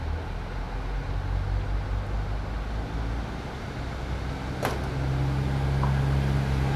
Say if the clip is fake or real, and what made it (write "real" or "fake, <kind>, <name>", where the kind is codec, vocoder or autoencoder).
real